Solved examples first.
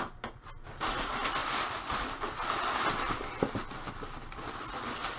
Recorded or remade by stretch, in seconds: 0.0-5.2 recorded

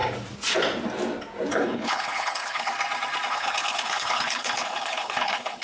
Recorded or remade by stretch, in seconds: 0.0-1.5 recorded; 1.5-2.7 remade; 2.7-3.3 recorded; 3.3-5.6 remade

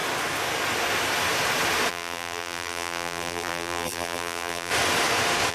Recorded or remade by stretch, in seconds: 0.0-1.9 recorded; 1.9-4.7 remade; 4.7-5.5 recorded

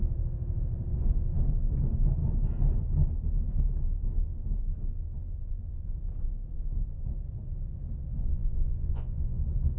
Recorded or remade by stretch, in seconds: 0.0-8.2 recorded; 8.2-9.4 remade; 9.4-9.8 recorded

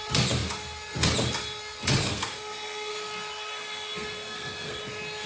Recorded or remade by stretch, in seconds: 0.0-2.0 recorded; 2.0-2.9 remade; 2.9-3.5 recorded; 3.5-4.8 remade; 4.8-5.3 recorded

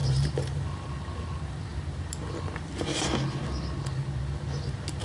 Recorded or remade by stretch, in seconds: 0.0-1.1 remade; 1.1-5.0 recorded